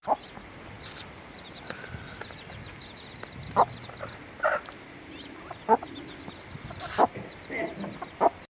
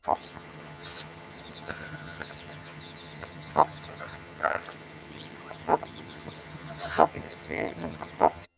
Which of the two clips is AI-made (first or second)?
second